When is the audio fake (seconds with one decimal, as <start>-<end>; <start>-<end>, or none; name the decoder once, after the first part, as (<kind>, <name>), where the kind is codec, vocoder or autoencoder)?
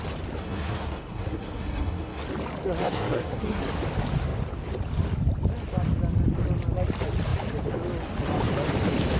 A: 0.4-2.2 (codec, SNAC); 2.8-3.6